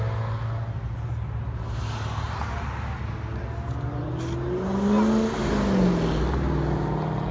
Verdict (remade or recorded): recorded